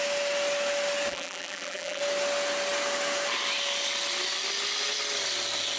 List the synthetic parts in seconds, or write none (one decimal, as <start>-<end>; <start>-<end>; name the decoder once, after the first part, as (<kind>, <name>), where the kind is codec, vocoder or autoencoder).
1.1-2.0 (vocoder, BigVGAN v2)